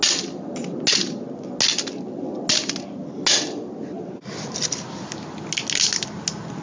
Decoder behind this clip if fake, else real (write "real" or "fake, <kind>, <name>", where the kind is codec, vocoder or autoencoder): real